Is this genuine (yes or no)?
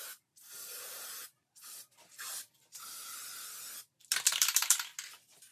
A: yes